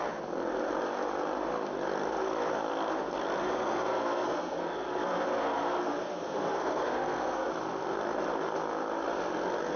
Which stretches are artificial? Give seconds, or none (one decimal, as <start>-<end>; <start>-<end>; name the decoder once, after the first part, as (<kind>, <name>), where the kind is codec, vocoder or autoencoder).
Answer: 3.4-7.5 (codec, SNAC)